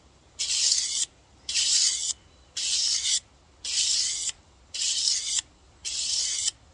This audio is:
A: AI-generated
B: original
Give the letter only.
B